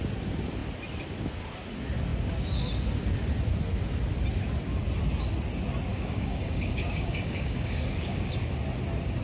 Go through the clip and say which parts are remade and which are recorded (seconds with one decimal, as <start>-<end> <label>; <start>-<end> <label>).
0.0-5.9 recorded; 5.9-8.3 remade; 8.3-9.2 recorded